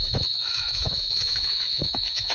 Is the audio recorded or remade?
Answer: remade